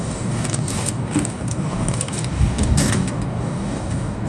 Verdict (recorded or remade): remade